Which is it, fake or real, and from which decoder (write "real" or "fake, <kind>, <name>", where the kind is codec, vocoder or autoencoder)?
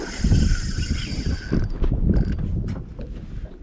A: real